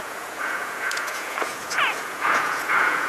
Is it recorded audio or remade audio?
remade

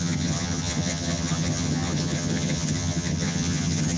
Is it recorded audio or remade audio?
remade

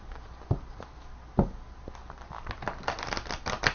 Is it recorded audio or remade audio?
recorded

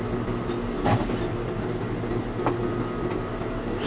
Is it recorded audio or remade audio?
recorded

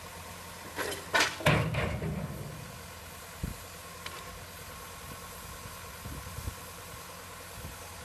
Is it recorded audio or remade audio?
recorded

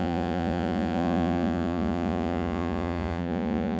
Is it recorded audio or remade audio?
remade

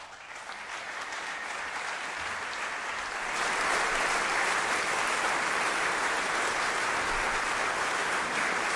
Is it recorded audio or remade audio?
recorded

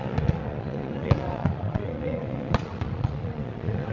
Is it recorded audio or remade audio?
remade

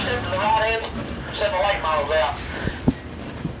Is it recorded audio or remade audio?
recorded